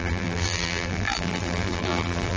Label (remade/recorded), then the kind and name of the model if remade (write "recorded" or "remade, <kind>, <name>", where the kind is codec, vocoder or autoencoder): remade, vocoder, BigVGAN v2